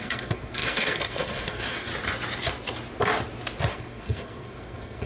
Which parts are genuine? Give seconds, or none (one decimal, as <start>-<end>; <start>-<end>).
1.9-3.7